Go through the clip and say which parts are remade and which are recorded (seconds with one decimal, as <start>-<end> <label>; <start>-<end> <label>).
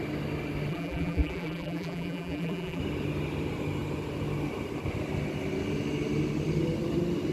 0.0-0.7 recorded; 0.7-2.8 remade; 2.8-7.3 recorded